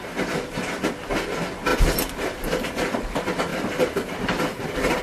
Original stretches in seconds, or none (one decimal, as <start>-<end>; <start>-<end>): 0.0-1.7; 2.8-3.5

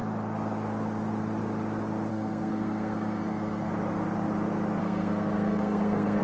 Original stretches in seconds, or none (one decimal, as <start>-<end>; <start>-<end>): 0.0-2.1; 3.7-4.8

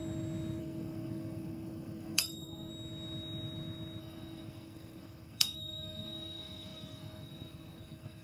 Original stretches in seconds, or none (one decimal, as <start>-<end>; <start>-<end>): 0.0-0.6; 2.7-4.0

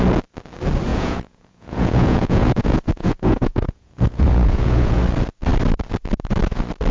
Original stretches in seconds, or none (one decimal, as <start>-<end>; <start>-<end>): 0.0-0.9; 5.0-6.9

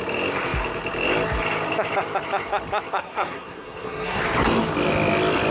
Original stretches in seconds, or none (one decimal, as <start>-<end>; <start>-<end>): 0.0-3.0; 4.2-5.5

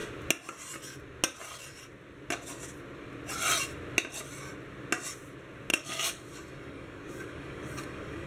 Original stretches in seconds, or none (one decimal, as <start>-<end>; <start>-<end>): 0.0-5.7

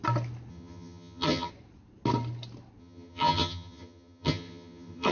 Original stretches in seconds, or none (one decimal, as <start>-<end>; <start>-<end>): 0.0-0.5; 1.5-2.8

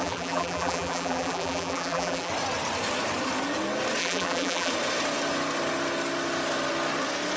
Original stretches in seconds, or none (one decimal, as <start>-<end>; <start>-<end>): 2.3-4.0; 4.7-7.4